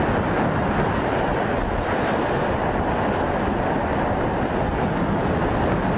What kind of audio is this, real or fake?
real